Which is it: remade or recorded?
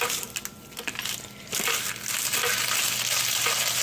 recorded